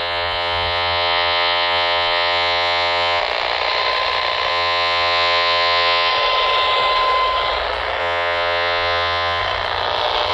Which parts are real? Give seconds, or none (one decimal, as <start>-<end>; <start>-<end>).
3.2-4.5; 6.1-8.0; 9.4-10.3